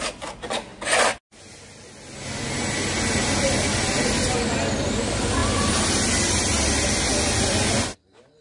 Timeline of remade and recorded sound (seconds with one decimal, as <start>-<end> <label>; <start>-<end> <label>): 0.0-8.4 recorded